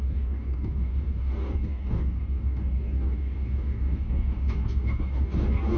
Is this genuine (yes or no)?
no